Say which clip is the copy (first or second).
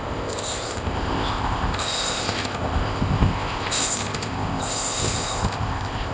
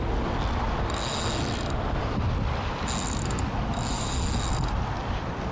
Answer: first